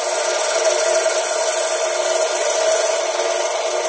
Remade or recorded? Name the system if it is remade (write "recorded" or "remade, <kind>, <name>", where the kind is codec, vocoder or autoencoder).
recorded